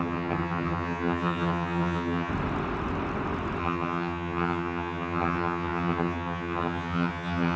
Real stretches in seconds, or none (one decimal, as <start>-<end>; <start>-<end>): 2.3-3.6